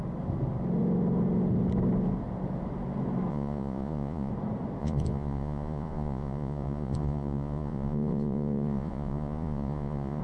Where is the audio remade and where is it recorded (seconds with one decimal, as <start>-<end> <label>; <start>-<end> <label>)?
0.0-3.3 recorded; 3.3-4.3 remade; 4.3-4.8 recorded; 4.8-10.2 remade